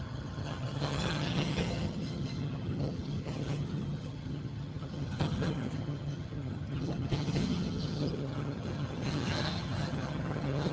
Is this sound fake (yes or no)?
yes